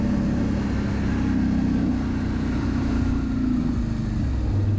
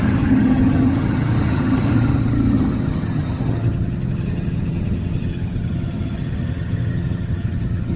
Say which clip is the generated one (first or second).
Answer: second